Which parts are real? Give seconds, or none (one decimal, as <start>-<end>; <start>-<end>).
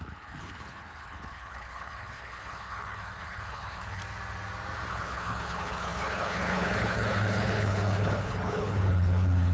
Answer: 4.0-4.9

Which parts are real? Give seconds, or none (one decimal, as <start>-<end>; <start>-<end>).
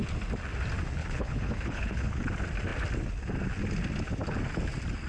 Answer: 0.0-1.0; 2.3-5.1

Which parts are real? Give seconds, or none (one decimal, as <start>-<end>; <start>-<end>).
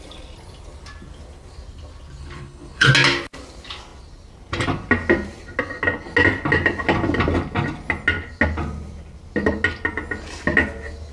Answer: 0.0-2.2; 2.9-11.1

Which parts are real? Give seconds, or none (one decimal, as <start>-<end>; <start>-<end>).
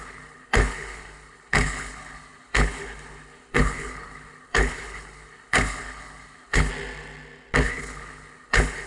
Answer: 6.7-7.6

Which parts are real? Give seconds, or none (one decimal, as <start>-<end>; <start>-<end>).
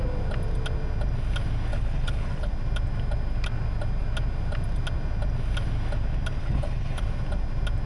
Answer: 0.0-1.7; 2.5-6.4; 7.0-7.9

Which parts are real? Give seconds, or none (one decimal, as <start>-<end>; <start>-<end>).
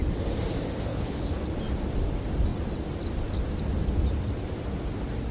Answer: 0.0-0.9; 1.4-5.3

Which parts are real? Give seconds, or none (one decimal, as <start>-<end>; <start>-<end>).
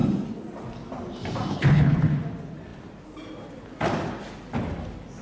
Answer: 0.0-1.5; 2.1-5.2